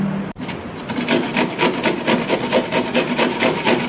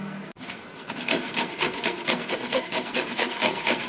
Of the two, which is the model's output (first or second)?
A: second